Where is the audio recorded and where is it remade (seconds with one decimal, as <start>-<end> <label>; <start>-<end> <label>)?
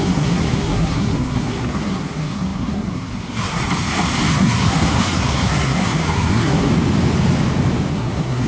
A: 0.0-3.6 remade; 3.6-4.3 recorded; 4.3-6.7 remade; 6.7-7.9 recorded; 7.9-8.5 remade